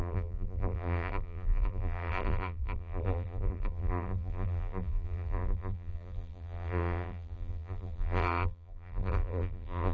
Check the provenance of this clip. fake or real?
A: fake